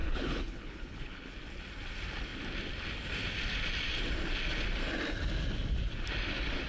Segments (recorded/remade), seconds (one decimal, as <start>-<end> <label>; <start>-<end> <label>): 0.0-1.3 remade; 1.3-6.7 recorded